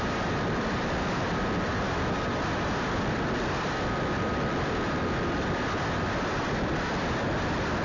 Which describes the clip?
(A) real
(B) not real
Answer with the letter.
B